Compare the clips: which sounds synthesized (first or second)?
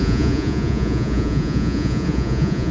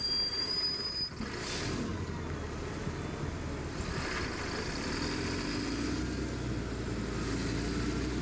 first